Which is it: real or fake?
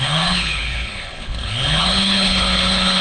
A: fake